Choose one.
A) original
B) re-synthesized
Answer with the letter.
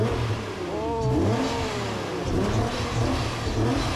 A